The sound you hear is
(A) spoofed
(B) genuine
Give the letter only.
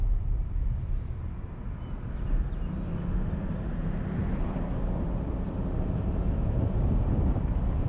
B